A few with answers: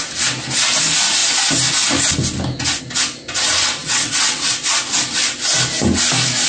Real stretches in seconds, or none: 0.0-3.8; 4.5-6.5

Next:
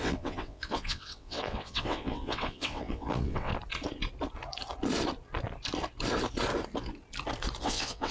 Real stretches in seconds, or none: 3.5-7.6

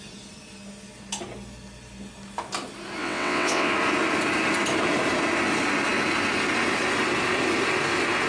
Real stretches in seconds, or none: 0.0-3.0; 3.7-8.3

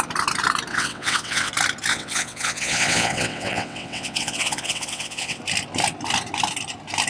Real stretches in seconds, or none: 0.0-0.7; 1.5-1.9; 5.4-7.1